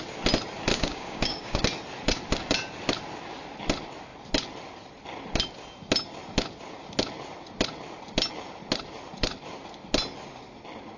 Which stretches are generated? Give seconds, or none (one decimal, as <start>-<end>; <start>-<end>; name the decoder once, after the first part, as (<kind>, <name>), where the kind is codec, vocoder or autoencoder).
0.7-1.6 (codec, DAC)